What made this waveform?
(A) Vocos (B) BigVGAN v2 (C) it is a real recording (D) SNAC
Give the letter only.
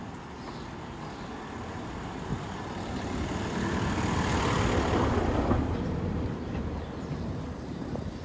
C